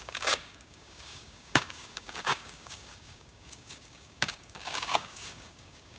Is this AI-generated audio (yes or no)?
yes